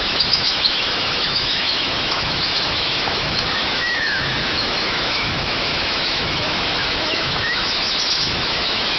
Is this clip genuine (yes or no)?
no